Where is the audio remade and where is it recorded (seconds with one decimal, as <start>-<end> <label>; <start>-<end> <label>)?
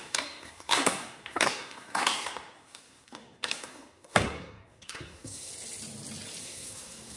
0.0-5.5 remade; 5.5-6.4 recorded; 6.4-7.2 remade